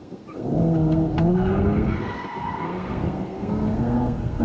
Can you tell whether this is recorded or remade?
remade